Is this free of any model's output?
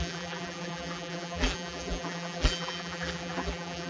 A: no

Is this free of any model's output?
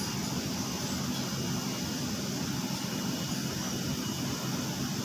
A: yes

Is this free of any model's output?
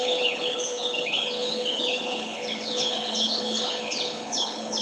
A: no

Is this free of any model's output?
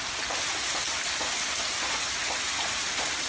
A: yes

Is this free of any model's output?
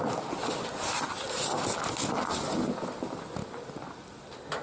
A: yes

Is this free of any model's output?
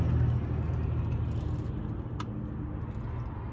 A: yes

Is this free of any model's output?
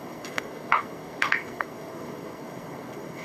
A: no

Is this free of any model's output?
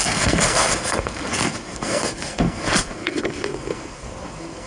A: no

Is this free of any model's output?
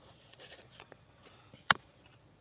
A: no